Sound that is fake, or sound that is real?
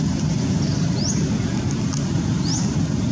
real